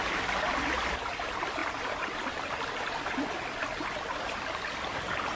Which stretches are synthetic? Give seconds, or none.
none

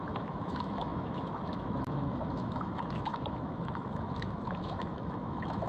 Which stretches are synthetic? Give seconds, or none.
0.0-5.7 (autoencoder, DAC-VAE)